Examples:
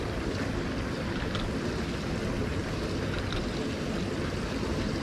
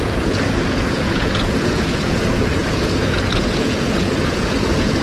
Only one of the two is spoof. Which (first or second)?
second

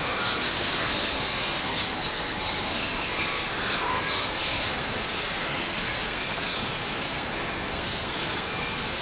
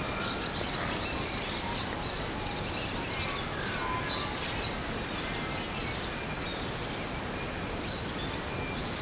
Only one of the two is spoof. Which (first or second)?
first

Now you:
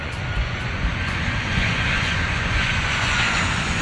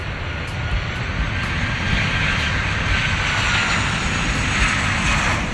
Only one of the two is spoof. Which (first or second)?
first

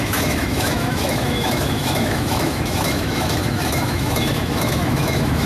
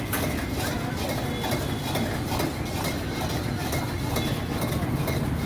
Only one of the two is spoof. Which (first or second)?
first